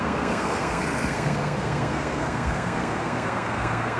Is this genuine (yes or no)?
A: no